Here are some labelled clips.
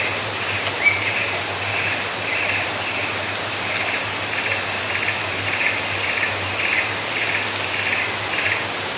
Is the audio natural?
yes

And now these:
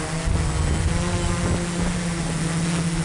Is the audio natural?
yes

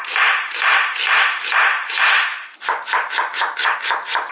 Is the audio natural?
yes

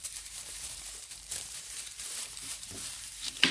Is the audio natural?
no